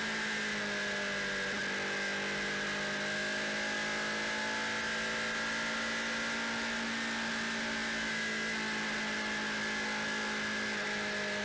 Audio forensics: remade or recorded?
recorded